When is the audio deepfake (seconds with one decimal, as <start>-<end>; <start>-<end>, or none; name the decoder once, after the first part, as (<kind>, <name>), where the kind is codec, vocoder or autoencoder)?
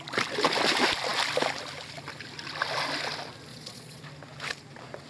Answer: 3.5-4.0 (vocoder, Vocos)